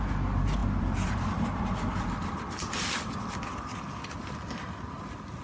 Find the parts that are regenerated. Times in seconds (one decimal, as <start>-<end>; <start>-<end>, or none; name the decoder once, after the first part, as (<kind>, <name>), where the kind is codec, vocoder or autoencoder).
0.6-3.8 (vocoder, BigVGAN v2)